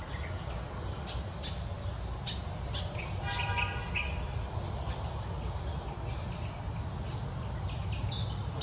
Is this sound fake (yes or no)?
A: no